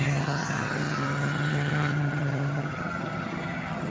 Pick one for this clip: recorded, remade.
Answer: remade